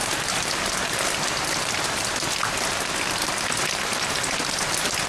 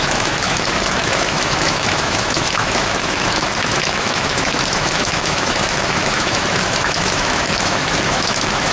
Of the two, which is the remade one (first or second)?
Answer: second